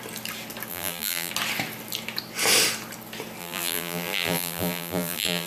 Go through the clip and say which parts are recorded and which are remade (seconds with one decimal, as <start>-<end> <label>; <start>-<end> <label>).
0.0-0.7 recorded; 0.7-1.3 remade; 1.3-3.4 recorded; 3.4-5.5 remade